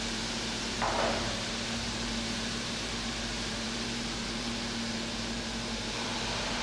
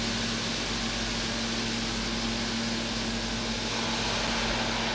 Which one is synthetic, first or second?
first